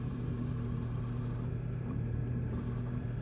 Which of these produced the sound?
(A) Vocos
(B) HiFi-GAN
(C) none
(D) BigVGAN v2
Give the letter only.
D